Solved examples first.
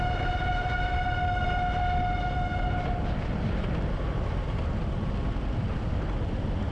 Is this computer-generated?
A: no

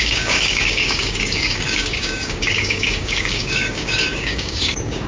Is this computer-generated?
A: yes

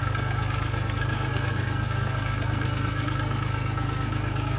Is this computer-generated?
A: yes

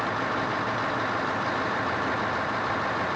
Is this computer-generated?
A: no